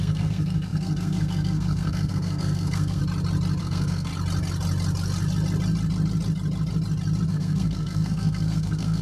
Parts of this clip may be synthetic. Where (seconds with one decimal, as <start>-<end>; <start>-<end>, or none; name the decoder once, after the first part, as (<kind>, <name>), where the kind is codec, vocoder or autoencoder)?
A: 0.0-3.0 (codec, SNAC); 3.6-4.1; 7.3-9.0